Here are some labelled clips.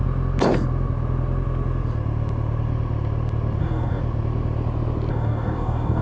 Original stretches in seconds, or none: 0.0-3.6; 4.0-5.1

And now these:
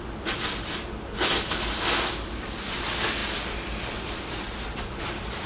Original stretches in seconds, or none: 0.0-5.5

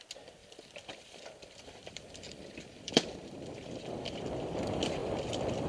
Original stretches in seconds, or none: 0.0-0.4; 3.8-5.7

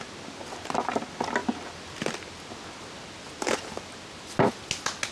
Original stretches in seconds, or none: 0.0-5.1

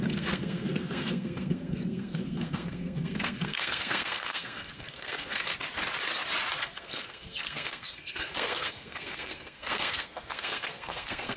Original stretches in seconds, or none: 5.5-6.6

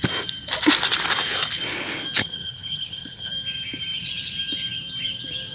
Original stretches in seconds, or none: 0.0-2.2; 3.3-5.5

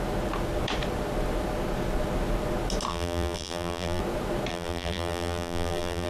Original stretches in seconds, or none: 0.0-2.9; 4.0-4.5